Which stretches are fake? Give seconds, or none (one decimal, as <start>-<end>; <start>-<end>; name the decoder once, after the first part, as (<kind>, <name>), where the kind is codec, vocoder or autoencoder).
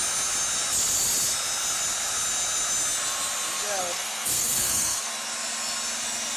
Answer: 3.8-5.1 (codec, SNAC)